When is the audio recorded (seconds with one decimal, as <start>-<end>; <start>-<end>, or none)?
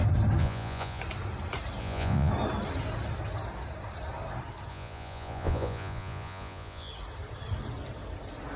0.0-0.4; 1.0-1.8; 2.3-4.7; 6.9-8.6